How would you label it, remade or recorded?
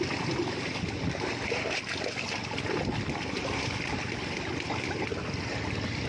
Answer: recorded